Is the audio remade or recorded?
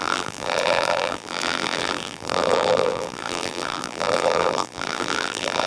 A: remade